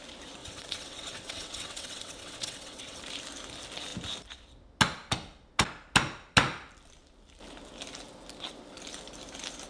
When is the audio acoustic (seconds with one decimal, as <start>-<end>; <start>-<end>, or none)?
0.0-0.4; 3.0-9.7